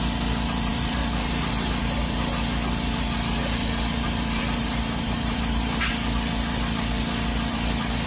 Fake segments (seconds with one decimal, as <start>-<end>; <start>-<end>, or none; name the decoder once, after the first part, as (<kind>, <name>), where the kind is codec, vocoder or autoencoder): 0.7-2.3 (vocoder, BigVGAN v2); 3.4-5.9